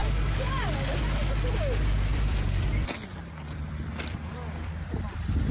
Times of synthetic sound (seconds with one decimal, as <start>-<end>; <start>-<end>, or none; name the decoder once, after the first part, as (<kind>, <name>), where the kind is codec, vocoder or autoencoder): 2.1-5.5 (vocoder, BigVGAN v2)